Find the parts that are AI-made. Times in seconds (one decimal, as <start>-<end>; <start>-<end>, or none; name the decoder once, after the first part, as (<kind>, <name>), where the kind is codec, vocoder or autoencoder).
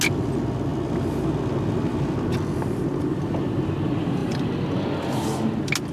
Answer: none